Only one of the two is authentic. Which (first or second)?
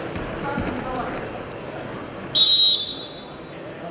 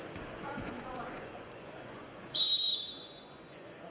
first